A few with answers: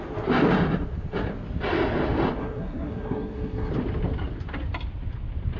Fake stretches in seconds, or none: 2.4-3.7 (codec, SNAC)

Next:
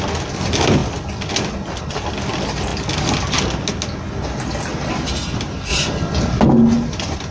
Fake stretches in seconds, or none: none

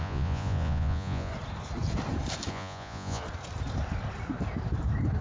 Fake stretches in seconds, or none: 0.0-1.3 (vocoder, Vocos); 2.5-3.2

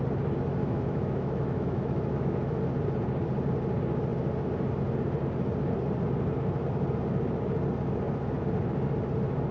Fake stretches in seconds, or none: 0.6-2.4 (autoencoder, DAC-VAE)

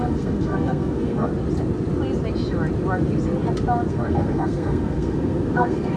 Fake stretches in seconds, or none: 0.0-1.3 (codec, SNAC); 3.9-6.0

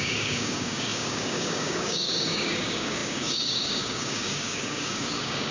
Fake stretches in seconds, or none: 0.0-5.5 (codec, DAC)

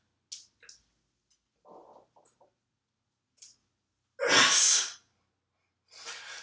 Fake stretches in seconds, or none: none

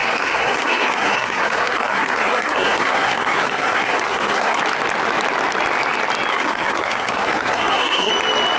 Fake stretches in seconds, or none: 0.0-4.6 (codec, SNAC); 6.3-8.1